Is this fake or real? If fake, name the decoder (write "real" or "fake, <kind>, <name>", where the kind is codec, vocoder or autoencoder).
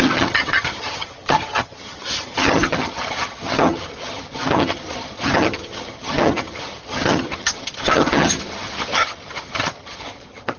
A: fake, vocoder, HiFi-GAN